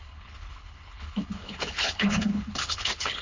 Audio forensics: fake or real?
fake